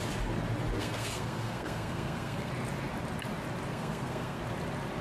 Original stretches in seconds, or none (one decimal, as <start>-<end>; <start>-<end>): 0.0-0.8; 2.5-3.7; 4.4-5.0